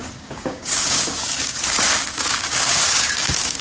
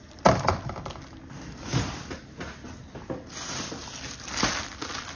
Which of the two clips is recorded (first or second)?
second